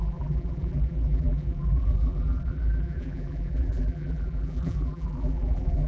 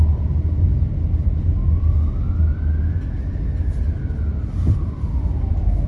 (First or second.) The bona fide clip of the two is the second